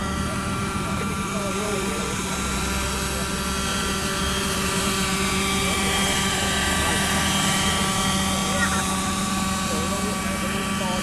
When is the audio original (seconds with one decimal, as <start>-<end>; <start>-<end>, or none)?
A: 2.3-3.7; 6.9-11.0